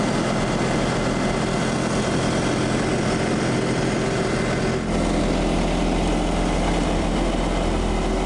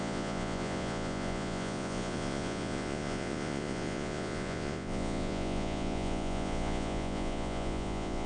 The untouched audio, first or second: first